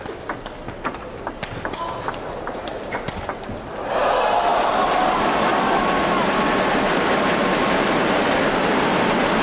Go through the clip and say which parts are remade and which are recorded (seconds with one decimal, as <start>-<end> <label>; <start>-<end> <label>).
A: 0.0-9.4 recorded